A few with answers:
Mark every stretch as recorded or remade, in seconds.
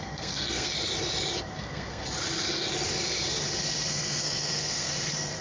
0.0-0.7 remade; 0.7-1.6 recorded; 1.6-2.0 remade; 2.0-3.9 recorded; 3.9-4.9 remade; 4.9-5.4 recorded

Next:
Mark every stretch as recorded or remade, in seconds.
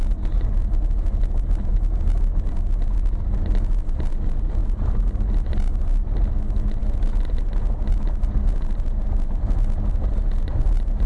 0.0-11.1 recorded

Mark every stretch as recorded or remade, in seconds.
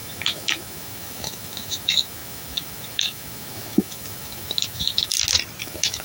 0.0-5.1 remade; 5.1-5.6 recorded; 5.6-6.0 remade